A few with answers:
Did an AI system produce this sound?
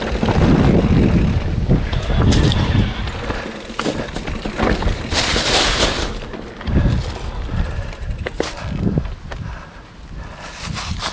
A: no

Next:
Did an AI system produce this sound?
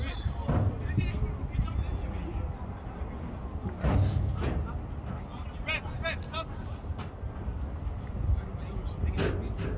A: no